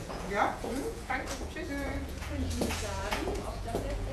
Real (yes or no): no